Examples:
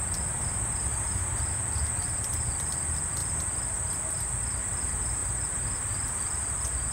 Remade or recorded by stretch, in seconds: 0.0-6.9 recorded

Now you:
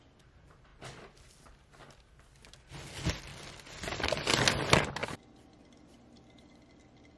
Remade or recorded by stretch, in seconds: 0.0-0.7 recorded; 0.7-2.1 remade; 2.1-3.3 recorded; 3.3-4.1 remade; 4.1-5.0 recorded; 5.0-7.2 remade

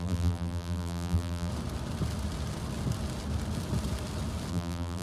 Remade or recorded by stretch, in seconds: 0.0-1.5 remade; 1.5-4.5 recorded; 4.5-5.0 remade